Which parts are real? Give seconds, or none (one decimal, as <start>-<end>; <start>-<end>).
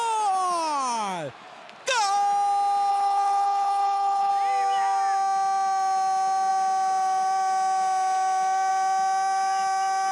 0.0-2.9; 4.3-10.1